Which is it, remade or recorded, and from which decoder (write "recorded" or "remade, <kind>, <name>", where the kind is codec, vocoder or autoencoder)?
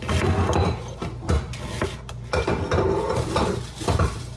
recorded